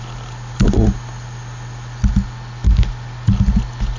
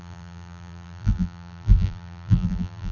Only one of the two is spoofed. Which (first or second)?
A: second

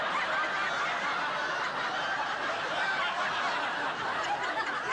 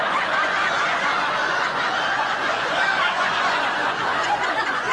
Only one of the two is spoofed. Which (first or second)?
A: second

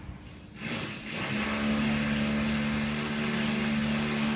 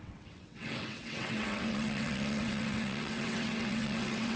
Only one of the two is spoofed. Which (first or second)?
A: second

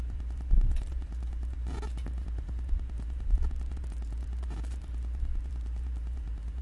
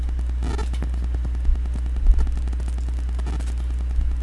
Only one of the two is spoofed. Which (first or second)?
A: first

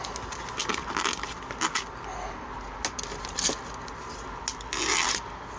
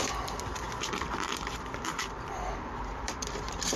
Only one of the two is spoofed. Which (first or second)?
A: second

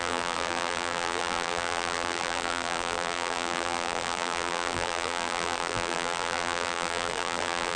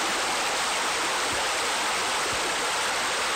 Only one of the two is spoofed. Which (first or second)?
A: first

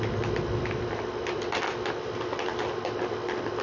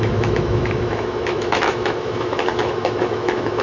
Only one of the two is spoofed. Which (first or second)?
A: second